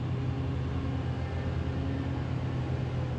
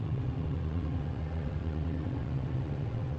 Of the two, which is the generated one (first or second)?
second